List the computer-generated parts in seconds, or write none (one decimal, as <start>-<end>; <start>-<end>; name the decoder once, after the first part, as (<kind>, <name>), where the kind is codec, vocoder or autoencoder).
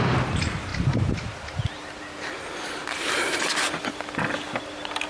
none